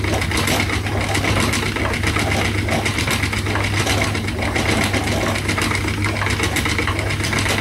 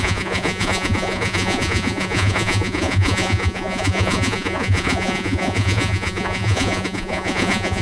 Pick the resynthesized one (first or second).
second